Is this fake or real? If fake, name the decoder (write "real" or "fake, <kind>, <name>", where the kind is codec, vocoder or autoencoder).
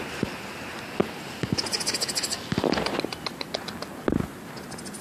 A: real